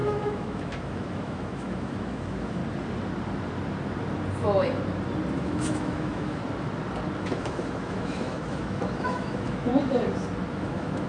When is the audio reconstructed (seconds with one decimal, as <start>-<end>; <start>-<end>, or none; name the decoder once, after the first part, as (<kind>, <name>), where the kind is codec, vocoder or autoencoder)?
0.0-2.6 (autoencoder, DAC-VAE); 5.3-6.4; 7.2-9.7; 10.5-11.1

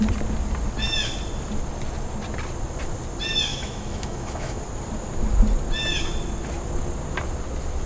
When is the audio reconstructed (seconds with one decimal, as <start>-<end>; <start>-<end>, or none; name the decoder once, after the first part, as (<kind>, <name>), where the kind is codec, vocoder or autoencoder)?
3.5-4.6 (autoencoder, DAC-VAE)